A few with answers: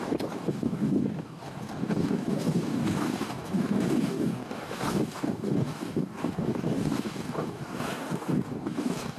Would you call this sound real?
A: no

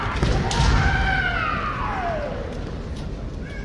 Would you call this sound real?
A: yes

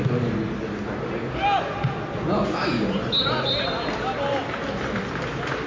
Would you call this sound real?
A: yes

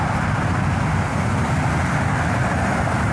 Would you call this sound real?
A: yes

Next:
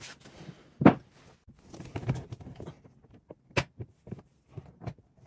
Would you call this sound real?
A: yes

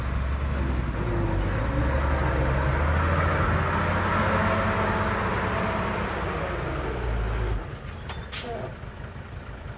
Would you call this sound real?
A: yes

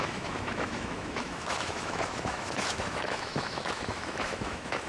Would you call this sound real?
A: no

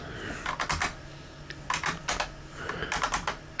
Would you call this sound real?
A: yes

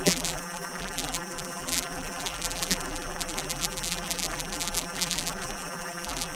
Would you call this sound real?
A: no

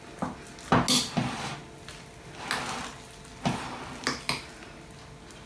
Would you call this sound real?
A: yes